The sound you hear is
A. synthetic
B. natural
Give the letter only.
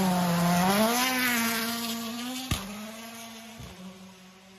B